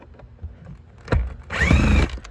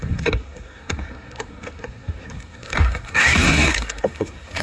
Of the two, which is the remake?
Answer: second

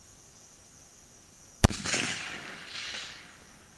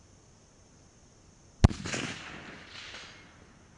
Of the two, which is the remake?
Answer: first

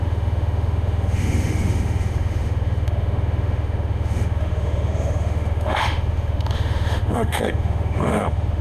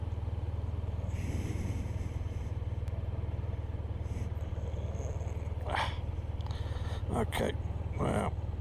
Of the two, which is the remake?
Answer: first